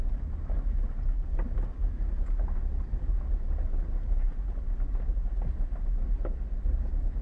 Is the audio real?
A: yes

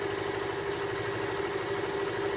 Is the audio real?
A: yes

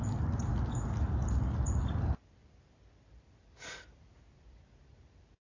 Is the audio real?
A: yes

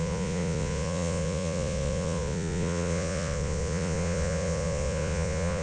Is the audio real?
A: no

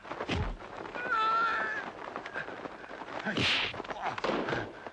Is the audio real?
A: yes